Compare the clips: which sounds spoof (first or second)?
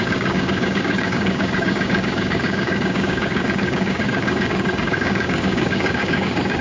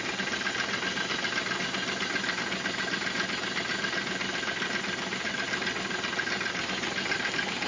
first